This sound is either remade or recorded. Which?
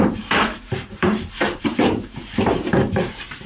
remade